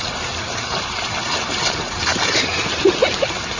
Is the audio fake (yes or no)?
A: no